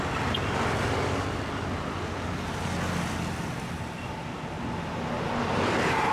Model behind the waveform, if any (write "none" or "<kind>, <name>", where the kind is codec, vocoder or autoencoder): none